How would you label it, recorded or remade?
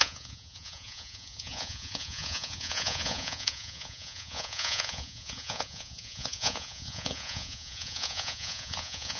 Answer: remade